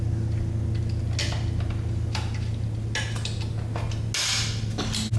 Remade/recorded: recorded